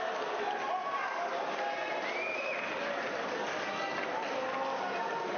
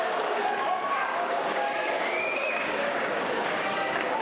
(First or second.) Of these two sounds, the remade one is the second